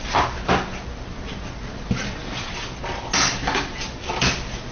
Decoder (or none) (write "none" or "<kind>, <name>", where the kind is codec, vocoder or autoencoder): none